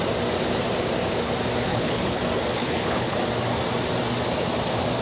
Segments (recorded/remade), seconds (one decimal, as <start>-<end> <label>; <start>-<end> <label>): 0.0-1.7 recorded; 1.7-2.2 remade; 2.2-2.6 recorded; 2.6-3.2 remade; 3.2-5.0 recorded